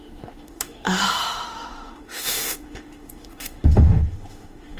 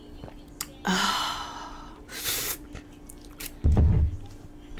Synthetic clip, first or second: first